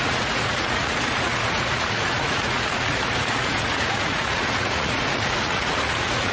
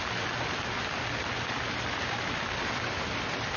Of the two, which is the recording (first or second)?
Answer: second